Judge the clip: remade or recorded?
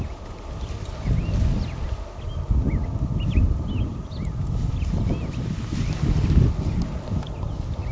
recorded